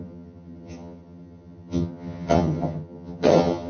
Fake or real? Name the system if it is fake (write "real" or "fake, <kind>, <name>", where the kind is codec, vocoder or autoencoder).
fake, vocoder, HiFi-GAN